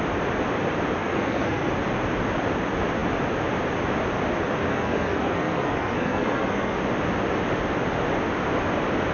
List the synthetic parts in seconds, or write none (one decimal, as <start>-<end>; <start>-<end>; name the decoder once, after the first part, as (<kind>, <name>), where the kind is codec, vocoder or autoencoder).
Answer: 1.0-1.7 (codec, SNAC); 4.7-6.8